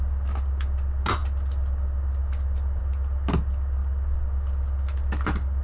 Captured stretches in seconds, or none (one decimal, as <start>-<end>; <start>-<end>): 0.0-5.6